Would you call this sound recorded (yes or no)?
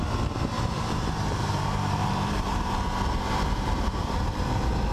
no